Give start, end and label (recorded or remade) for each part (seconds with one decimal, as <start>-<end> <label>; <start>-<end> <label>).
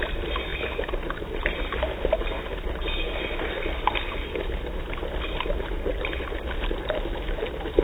0.0-7.8 recorded